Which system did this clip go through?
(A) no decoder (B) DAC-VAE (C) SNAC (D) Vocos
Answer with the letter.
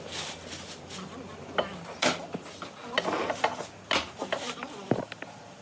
A